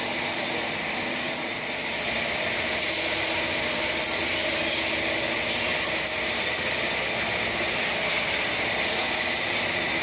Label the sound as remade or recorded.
recorded